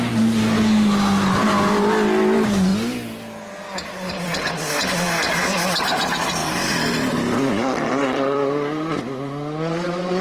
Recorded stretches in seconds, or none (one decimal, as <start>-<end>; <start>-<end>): 0.0-6.4; 9.0-10.2